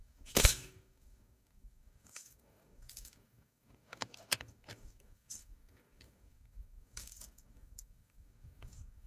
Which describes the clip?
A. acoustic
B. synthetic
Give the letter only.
B